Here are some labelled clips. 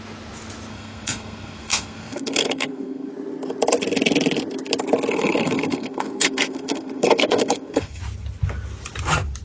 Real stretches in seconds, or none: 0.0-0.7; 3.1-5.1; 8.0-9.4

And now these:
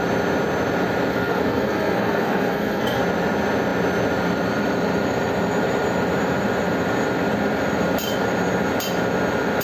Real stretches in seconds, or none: 0.0-1.1; 3.0-9.6

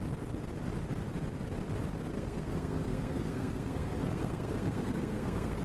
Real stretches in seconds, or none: 0.0-2.1